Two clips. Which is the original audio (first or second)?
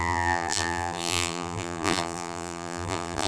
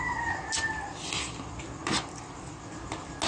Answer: second